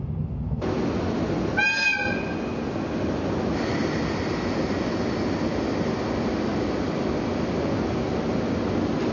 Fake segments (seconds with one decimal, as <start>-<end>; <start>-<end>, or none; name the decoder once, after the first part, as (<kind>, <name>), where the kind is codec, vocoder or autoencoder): none